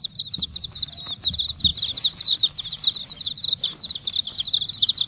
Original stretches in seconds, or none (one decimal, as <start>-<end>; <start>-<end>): 0.0-5.1